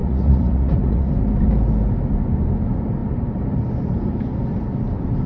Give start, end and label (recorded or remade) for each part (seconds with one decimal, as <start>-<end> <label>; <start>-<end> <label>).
0.0-1.1 remade; 1.1-5.3 recorded